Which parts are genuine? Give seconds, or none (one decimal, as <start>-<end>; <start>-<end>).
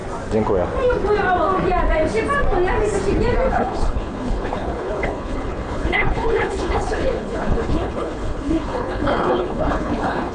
0.0-3.5